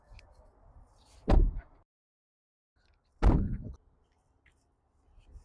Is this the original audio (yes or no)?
yes